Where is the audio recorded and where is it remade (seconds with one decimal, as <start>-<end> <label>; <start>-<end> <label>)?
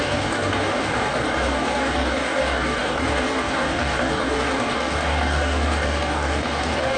0.0-7.0 remade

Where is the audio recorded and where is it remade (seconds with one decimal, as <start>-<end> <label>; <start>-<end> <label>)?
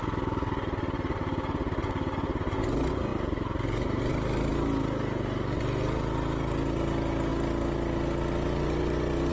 0.0-9.3 recorded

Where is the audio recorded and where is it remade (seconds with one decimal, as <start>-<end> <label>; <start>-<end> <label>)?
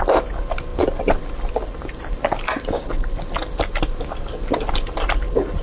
0.0-5.6 recorded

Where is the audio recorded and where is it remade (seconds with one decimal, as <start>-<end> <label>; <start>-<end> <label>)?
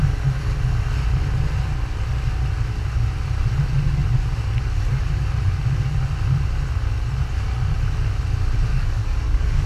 0.0-8.7 recorded; 8.7-9.7 remade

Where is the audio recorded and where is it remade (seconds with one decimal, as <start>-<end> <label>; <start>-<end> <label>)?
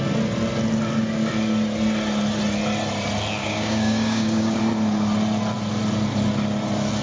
0.0-3.4 recorded; 3.4-4.6 remade; 4.6-7.0 recorded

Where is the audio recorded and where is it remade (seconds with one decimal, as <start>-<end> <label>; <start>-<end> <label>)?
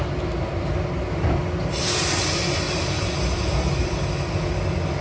0.0-5.0 recorded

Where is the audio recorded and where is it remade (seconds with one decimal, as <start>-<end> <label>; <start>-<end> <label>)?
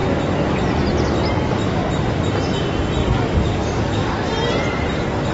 0.0-3.0 recorded; 3.0-4.3 remade; 4.3-5.3 recorded